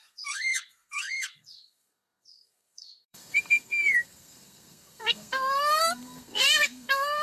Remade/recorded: remade